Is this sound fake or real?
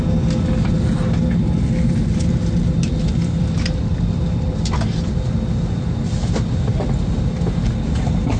real